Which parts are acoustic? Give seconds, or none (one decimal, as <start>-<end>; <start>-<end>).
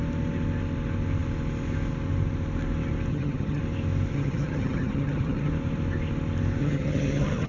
0.0-3.1; 3.6-4.1; 5.5-6.6